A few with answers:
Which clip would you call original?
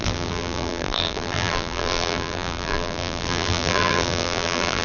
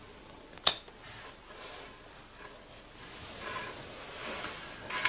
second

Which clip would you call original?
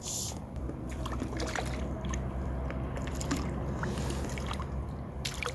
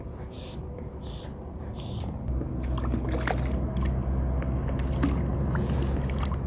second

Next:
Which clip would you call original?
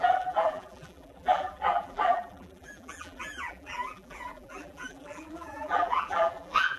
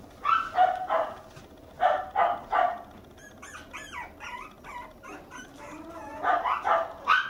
second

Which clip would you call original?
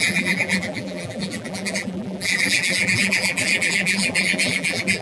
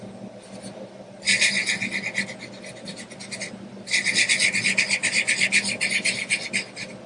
second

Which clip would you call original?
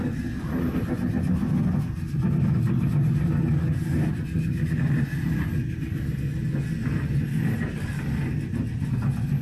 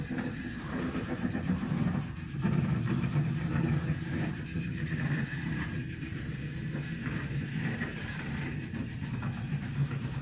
first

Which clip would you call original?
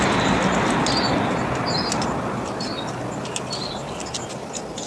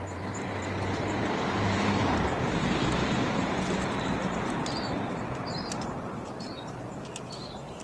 first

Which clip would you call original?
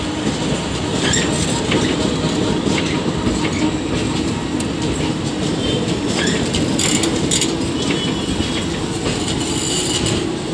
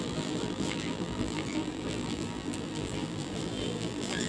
first